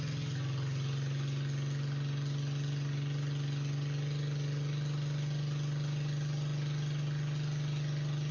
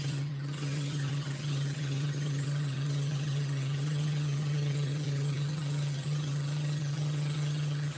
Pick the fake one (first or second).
second